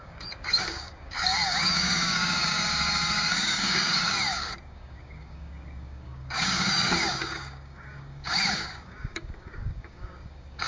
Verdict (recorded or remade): remade